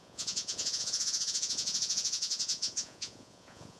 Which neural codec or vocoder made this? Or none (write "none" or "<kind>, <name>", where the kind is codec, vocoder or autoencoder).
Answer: vocoder, Vocos